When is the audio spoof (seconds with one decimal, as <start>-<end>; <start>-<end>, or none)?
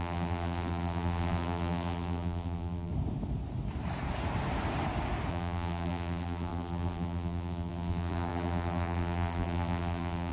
0.0-2.9; 5.3-10.3